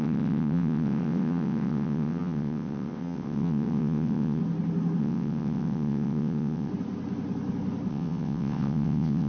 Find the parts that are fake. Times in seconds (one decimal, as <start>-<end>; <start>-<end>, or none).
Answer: 0.0-4.4; 5.0-6.7; 7.9-9.3